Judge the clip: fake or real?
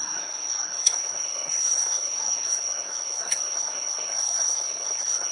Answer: fake